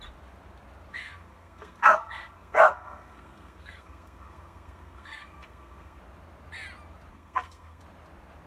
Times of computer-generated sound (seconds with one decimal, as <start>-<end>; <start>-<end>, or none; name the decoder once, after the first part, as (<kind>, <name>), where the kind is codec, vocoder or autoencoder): 0.9-6.0 (codec, SNAC); 7.1-7.8